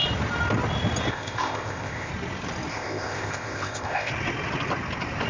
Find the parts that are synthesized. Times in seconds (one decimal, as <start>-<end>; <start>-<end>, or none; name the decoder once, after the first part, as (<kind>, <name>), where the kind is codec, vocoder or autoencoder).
1.1-2.1 (codec, ZipCodec); 2.7-4.1